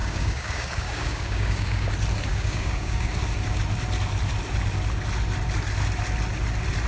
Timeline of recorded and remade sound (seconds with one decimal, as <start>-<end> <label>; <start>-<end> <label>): 0.0-1.9 remade; 1.9-2.3 recorded; 2.3-3.1 remade; 3.1-6.9 recorded